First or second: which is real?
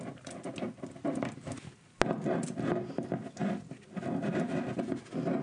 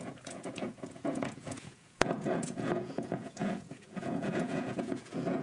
first